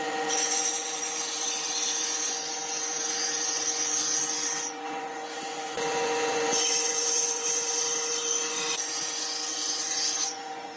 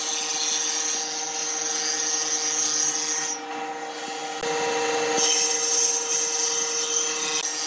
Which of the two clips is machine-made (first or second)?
first